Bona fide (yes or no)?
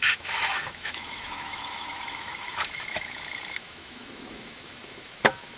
no